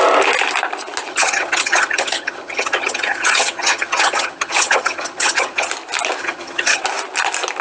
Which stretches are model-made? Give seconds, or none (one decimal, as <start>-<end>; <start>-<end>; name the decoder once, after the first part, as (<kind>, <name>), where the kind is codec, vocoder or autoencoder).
1.1-5.7 (vocoder, HiFi-GAN); 6.2-6.8